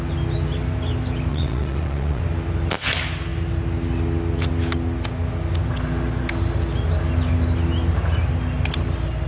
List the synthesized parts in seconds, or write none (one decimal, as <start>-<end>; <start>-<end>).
1.3-2.2